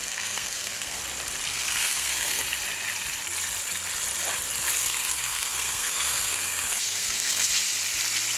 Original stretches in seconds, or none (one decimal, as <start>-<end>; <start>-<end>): 1.0-1.5; 2.4-4.8; 7.5-8.4